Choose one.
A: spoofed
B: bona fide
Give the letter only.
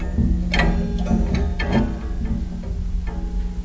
B